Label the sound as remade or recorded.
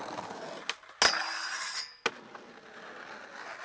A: recorded